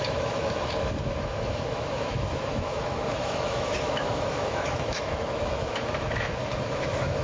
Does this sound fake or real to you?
fake